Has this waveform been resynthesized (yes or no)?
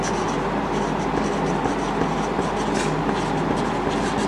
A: no